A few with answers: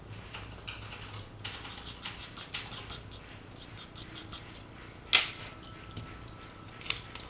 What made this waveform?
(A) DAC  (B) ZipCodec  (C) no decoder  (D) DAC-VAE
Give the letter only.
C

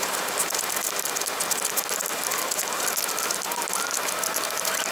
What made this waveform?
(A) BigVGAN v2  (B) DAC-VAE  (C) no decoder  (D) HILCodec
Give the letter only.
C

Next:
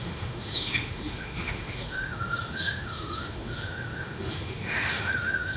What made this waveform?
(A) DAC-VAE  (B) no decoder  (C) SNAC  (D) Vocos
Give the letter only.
A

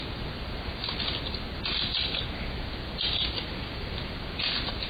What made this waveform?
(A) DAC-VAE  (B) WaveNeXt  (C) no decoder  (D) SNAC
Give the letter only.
C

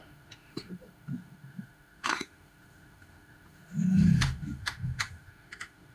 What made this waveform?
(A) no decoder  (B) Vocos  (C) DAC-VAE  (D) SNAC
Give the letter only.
C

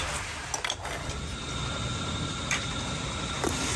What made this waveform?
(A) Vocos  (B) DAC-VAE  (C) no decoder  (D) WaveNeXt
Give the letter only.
C